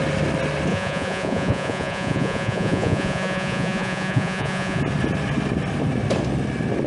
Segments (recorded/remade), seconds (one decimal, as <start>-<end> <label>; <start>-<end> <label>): 0.0-0.7 recorded; 0.7-4.8 remade; 4.8-6.9 recorded